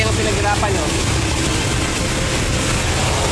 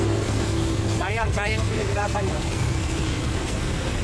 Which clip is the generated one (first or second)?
second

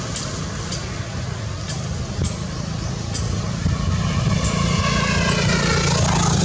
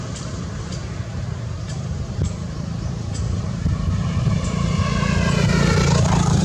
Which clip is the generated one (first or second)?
second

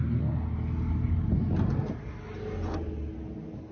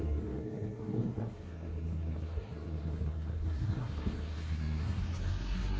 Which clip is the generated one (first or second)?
second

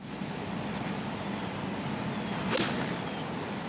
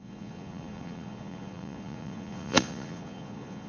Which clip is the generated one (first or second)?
second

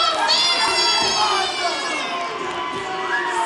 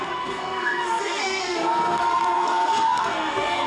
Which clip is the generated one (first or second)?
second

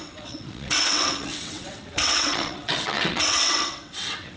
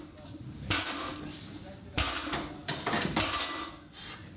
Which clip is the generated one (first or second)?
first